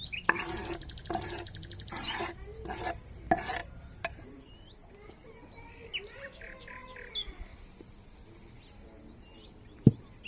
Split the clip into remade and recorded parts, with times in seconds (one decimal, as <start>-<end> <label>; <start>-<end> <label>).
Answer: 0.0-3.6 recorded; 3.6-4.4 remade; 4.4-10.3 recorded